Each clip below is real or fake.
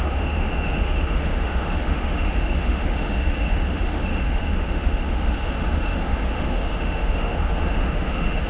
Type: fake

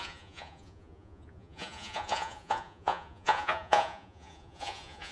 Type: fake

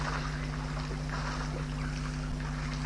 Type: real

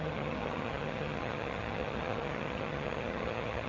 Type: fake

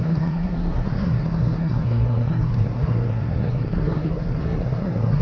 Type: fake